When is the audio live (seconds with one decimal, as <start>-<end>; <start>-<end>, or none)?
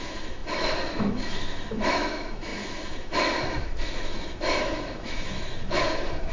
none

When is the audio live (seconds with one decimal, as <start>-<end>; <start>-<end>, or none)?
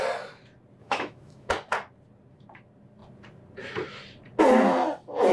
0.0-0.8; 1.5-5.3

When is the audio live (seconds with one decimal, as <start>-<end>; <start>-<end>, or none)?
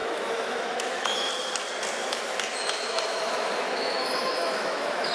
1.3-2.0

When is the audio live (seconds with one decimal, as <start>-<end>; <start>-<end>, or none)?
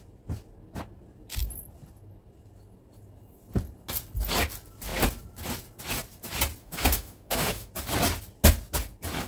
0.0-6.6; 7.7-9.3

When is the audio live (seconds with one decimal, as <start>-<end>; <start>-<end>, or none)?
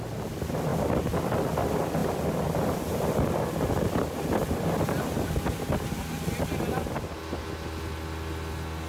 0.0-8.9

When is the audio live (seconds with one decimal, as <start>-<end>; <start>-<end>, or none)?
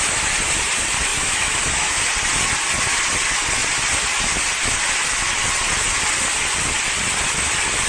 0.0-1.1; 2.0-7.9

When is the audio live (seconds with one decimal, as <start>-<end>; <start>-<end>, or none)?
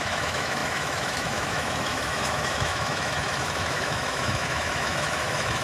none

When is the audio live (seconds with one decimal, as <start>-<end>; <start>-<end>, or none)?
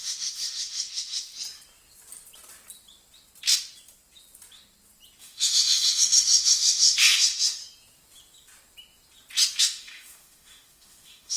1.3-5.2; 7.6-9.6